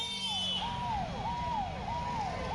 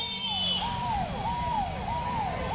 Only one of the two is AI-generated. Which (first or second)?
second